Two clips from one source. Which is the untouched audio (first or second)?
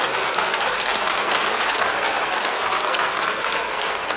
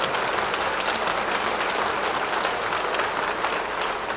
second